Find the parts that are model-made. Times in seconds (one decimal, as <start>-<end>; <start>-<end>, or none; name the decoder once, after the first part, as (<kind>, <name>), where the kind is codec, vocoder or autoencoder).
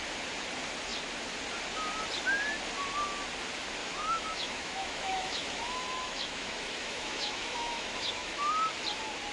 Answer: 3.8-8.5 (autoencoder, DAC-VAE)